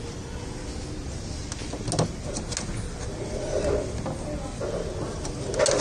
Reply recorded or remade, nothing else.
recorded